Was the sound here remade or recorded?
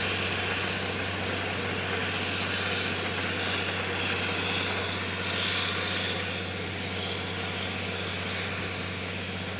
recorded